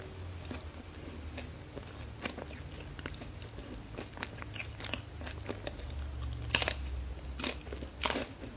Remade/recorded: recorded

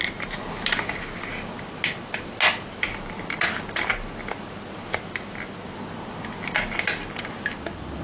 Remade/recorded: recorded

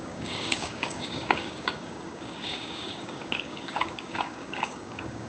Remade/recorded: remade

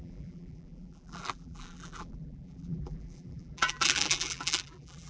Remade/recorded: remade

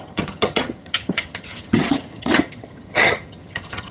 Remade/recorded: remade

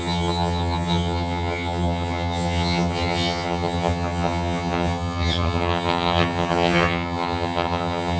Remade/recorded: remade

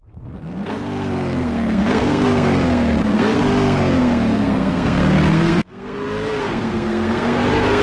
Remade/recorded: remade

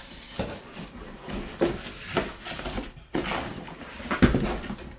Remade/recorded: recorded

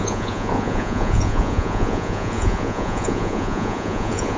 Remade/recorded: remade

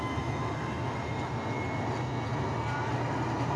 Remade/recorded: recorded